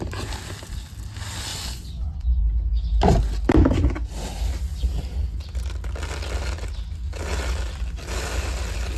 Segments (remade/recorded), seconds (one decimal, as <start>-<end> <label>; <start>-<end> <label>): 0.0-1.5 recorded; 1.5-2.4 remade; 2.4-9.0 recorded